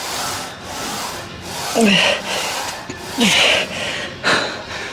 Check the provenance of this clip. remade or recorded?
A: recorded